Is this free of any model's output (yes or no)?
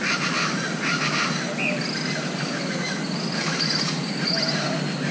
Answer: yes